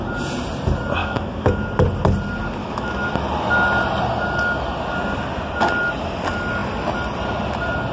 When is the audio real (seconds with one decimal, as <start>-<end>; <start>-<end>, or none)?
0.0-1.0; 1.7-2.6; 3.1-7.9